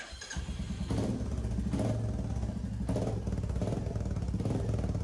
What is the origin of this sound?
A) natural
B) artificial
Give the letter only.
A